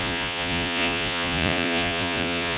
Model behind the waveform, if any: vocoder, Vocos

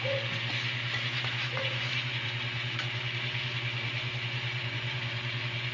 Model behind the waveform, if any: vocoder, Vocos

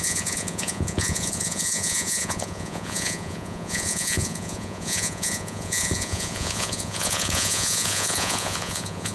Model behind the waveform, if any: vocoder, Vocos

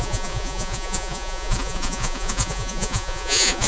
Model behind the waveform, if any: vocoder, Vocos